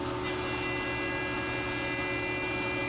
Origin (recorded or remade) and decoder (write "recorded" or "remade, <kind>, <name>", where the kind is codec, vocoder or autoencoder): recorded